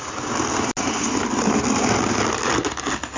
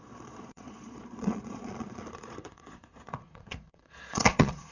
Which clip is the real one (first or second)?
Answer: first